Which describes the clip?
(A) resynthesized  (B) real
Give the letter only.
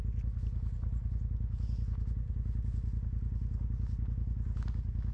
B